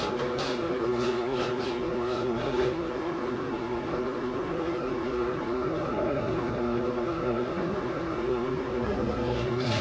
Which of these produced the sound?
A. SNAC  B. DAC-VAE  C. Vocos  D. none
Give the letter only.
A